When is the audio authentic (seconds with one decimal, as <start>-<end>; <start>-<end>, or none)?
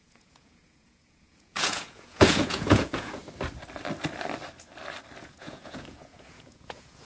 3.2-5.2